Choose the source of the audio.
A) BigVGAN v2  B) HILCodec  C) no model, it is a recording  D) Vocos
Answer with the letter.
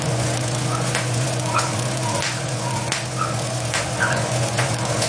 D